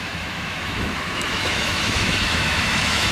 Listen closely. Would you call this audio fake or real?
fake